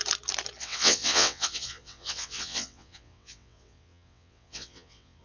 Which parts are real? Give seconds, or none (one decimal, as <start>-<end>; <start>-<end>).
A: 0.0-0.6